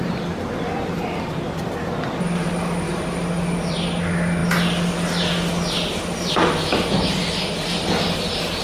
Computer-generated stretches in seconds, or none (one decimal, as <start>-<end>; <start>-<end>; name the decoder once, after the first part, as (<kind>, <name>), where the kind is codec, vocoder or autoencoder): none